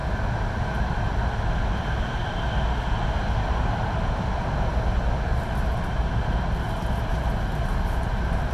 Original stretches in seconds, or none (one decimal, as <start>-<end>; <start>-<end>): 0.0-5.3; 6.1-8.5